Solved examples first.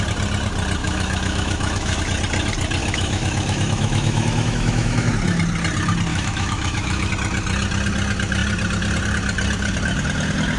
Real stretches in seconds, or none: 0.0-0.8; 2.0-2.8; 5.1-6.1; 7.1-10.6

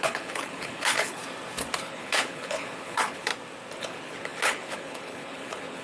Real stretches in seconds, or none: 1.2-1.8; 3.3-3.8